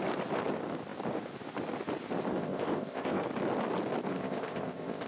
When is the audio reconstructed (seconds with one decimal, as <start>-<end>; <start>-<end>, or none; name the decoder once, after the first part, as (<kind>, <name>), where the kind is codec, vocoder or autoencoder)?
2.3-3.2 (codec, ZipCodec); 4.1-5.1